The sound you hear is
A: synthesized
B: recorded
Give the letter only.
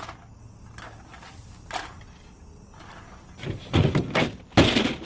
B